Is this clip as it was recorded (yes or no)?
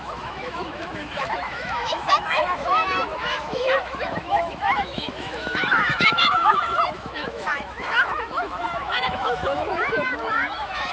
no